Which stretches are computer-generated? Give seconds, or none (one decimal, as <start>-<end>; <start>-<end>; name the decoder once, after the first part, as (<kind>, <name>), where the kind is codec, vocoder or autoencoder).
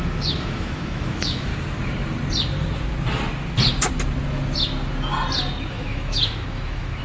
0.0-1.5 (autoencoder, DAC-VAE); 5.7-7.0